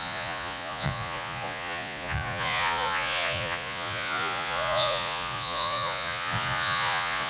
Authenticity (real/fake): fake